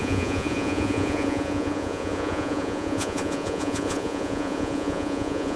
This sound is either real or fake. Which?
fake